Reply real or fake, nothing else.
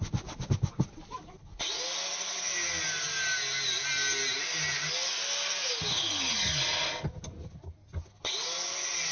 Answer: real